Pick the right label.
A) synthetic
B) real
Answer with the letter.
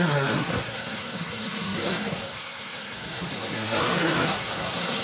A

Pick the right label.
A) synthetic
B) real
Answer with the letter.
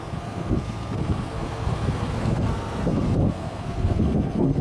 A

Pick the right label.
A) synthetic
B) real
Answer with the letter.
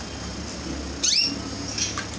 B